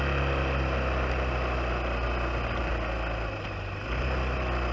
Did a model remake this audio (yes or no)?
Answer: no